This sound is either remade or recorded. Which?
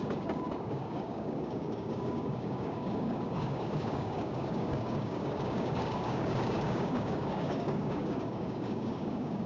remade